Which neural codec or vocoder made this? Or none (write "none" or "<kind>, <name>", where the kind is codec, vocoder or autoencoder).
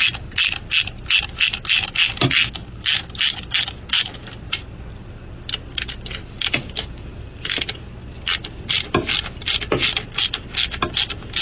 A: none